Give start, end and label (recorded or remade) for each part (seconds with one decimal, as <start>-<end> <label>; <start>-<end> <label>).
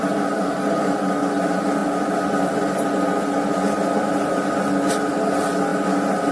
0.0-6.3 recorded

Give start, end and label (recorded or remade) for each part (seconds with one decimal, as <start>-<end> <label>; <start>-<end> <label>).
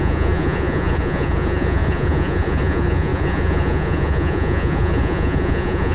0.0-5.9 remade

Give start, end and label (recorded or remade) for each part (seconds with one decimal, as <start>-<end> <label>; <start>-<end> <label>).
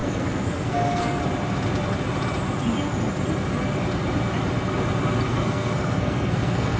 0.0-1.2 remade; 1.2-5.3 recorded; 5.3-6.8 remade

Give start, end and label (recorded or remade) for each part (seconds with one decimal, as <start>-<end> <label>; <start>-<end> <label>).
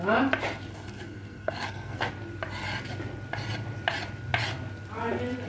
0.0-0.7 recorded; 0.7-2.1 remade; 2.1-5.5 recorded